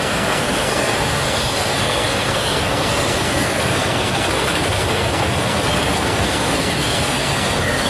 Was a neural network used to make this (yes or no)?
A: yes